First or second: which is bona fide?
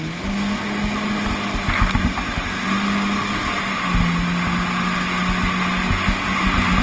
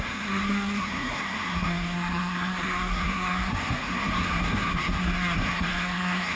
first